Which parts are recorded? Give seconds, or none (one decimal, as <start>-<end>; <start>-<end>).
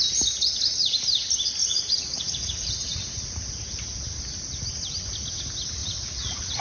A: 0.0-1.6; 3.4-5.8